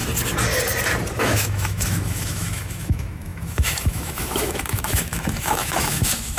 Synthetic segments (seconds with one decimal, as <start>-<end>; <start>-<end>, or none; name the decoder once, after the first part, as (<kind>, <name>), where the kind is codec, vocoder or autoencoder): 1.1-6.4 (autoencoder, DAC-VAE)